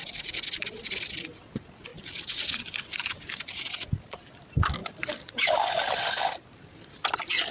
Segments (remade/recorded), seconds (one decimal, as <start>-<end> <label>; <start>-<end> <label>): 0.0-7.5 recorded